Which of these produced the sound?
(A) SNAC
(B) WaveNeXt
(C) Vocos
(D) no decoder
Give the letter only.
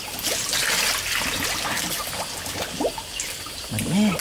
D